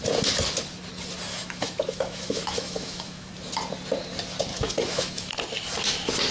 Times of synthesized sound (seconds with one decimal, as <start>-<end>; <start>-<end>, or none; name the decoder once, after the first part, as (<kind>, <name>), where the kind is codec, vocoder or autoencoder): 1.3-3.3 (autoencoder, DAC-VAE); 4.5-5.3